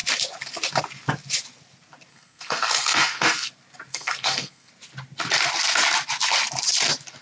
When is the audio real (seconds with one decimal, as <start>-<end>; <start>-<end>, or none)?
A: 0.0-2.1; 3.5-3.9; 4.7-7.2